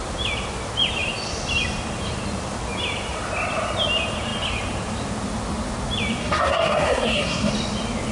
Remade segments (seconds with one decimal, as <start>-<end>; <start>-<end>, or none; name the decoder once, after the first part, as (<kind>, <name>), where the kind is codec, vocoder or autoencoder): 6.2-7.5 (codec, SNAC)